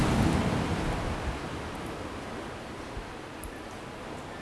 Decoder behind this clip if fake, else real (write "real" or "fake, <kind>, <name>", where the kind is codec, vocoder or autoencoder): real